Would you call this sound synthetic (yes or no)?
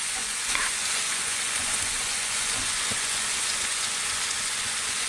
yes